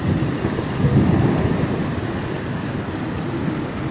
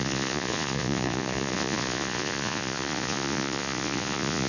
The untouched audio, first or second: first